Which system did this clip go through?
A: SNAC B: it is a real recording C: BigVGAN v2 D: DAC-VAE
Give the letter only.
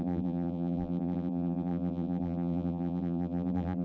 C